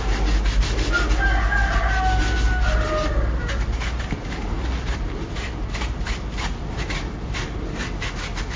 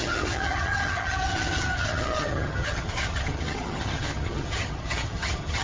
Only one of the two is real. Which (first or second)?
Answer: first